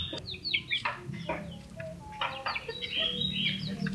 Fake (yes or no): no